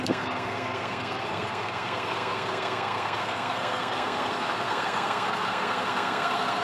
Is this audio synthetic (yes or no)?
yes